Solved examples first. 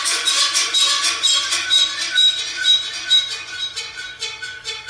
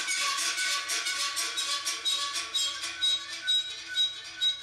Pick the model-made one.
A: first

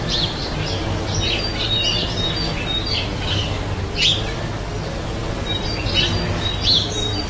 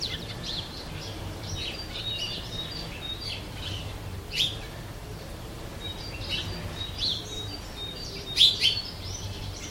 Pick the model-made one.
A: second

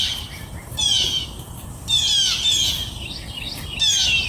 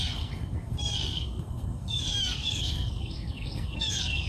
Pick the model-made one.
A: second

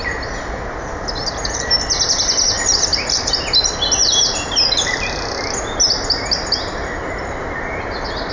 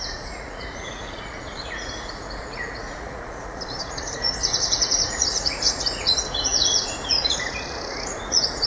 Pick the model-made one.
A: second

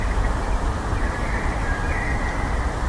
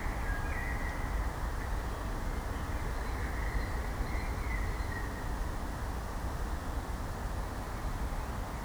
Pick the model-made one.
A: first